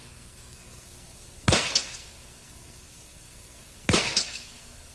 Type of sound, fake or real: fake